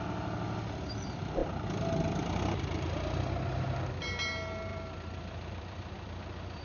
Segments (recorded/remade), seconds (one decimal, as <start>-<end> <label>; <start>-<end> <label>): 0.0-4.7 recorded; 4.7-6.6 remade